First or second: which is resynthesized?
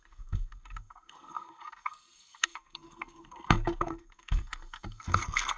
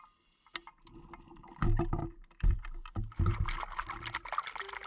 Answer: first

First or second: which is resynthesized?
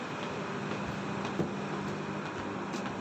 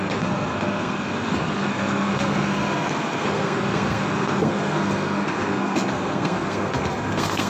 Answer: second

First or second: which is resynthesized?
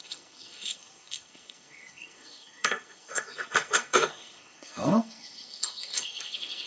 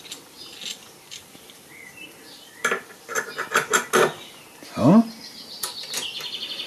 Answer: first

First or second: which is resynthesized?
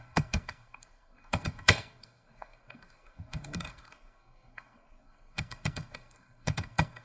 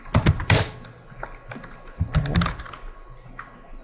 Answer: first